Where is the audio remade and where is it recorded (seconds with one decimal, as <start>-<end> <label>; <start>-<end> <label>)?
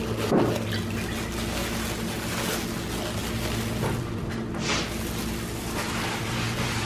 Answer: 0.0-6.9 recorded